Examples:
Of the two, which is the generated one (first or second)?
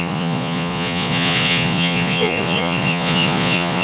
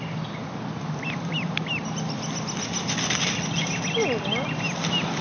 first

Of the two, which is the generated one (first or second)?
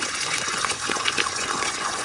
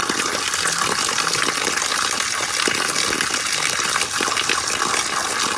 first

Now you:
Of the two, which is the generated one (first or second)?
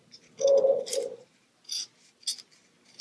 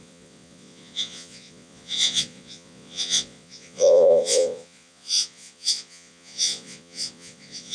second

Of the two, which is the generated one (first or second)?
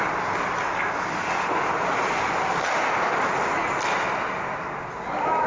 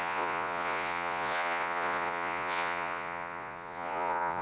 second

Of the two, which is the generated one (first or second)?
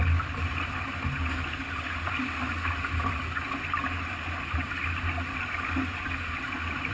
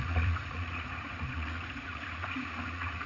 second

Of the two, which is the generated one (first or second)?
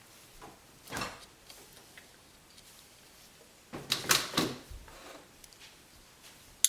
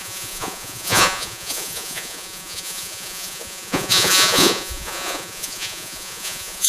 second